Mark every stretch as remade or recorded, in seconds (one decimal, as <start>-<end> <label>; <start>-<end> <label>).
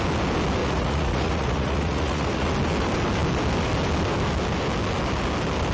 0.0-0.6 recorded; 0.6-2.5 remade; 2.5-5.7 recorded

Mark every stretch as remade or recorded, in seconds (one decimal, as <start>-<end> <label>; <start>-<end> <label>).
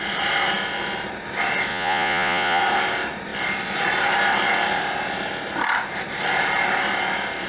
0.0-1.7 recorded; 1.7-2.6 remade; 2.6-7.5 recorded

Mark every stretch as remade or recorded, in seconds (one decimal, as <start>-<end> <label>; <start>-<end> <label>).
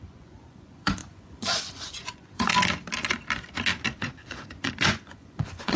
0.0-2.5 remade; 2.5-4.0 recorded; 4.0-5.8 remade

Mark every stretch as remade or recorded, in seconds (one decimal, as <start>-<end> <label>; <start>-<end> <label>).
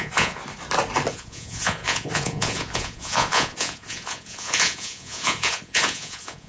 0.0-0.4 remade; 0.4-1.1 recorded; 1.1-6.5 remade